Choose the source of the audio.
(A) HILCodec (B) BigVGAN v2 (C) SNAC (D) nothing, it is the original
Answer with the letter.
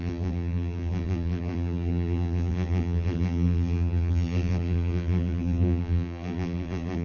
B